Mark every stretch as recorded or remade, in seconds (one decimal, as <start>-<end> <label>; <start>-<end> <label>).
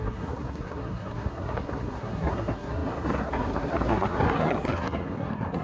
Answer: 0.0-5.6 remade